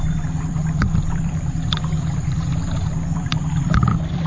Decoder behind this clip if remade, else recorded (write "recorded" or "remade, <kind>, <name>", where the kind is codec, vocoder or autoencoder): remade, vocoder, BigVGAN v2